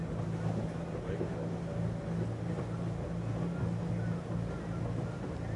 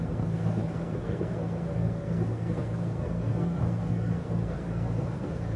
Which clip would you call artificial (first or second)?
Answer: second